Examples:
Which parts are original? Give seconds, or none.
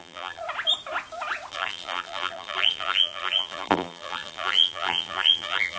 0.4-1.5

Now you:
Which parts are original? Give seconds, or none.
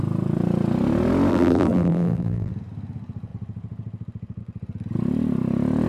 0.0-1.3; 2.5-5.9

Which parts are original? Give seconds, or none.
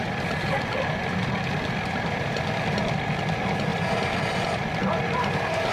0.0-1.0; 3.0-3.7; 4.8-5.7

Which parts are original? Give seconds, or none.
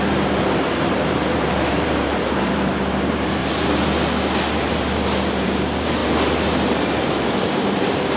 3.4-4.6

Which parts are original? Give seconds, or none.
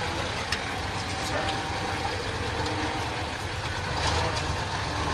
0.0-5.1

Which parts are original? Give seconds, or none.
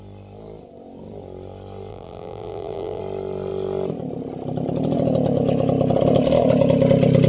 0.0-1.9; 3.0-7.3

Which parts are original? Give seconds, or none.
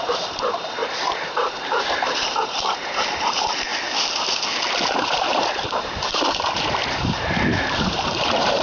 3.7-4.9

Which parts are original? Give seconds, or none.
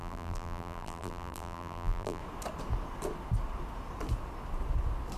2.2-5.2